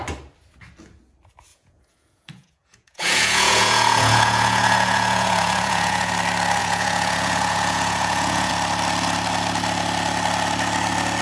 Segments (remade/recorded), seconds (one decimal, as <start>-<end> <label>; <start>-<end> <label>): 0.0-1.5 recorded; 1.5-6.1 remade; 6.1-6.6 recorded; 6.6-8.5 remade; 8.5-11.2 recorded